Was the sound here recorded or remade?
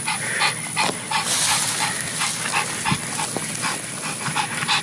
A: recorded